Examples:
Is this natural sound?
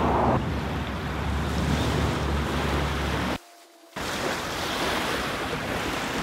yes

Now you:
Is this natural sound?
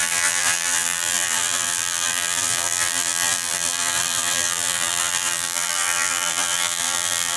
no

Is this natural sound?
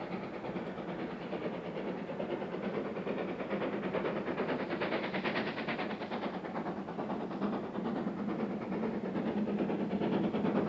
yes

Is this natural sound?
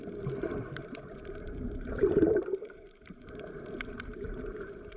no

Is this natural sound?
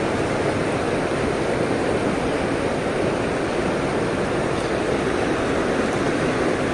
yes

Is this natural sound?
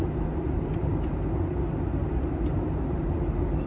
no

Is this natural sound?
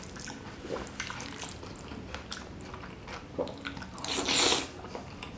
yes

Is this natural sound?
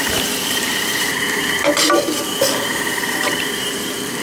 no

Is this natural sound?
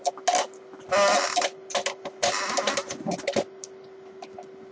yes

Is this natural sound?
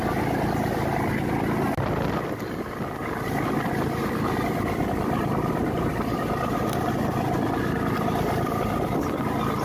yes